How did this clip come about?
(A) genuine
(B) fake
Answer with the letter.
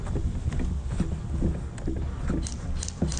A